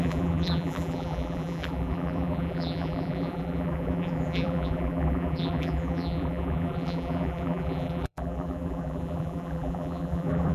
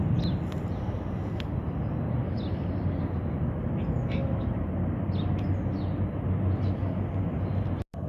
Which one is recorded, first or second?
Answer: second